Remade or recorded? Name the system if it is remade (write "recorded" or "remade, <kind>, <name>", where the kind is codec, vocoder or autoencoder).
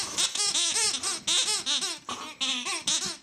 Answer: recorded